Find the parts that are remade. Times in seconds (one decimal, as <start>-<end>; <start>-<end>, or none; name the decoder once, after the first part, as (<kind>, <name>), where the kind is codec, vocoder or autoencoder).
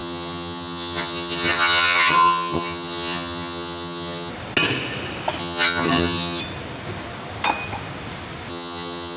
0.0-4.3 (vocoder, HiFi-GAN); 5.4-6.4; 8.5-9.2